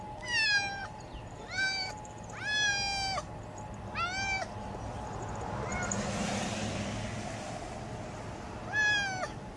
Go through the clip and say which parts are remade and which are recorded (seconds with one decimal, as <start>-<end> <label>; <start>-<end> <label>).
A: 0.0-0.8 recorded; 0.8-1.9 remade; 1.9-5.7 recorded; 5.7-6.5 remade; 6.5-9.6 recorded

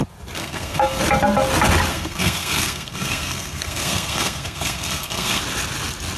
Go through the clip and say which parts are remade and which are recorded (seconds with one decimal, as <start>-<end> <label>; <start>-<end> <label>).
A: 0.0-0.4 recorded; 0.4-1.0 remade; 1.0-1.9 recorded; 1.9-5.4 remade; 5.4-6.2 recorded

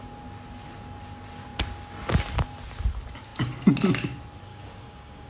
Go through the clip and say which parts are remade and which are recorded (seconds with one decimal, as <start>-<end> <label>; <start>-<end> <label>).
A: 0.0-4.5 recorded; 4.5-5.3 remade